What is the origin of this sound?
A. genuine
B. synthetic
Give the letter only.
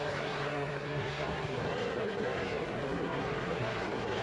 B